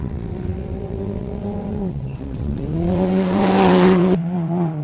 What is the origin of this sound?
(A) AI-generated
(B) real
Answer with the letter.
A